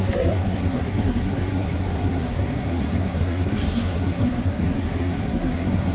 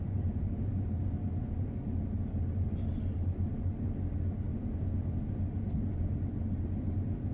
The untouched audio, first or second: second